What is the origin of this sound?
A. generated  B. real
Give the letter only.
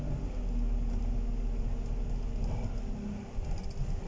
B